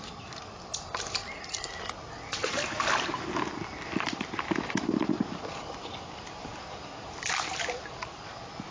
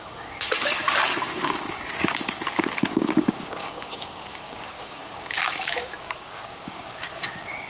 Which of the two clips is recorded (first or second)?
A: first